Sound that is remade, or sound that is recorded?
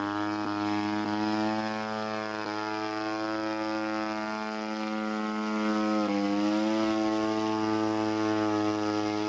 recorded